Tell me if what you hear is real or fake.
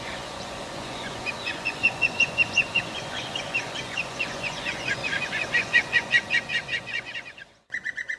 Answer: fake